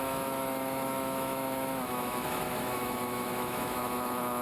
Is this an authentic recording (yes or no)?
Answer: no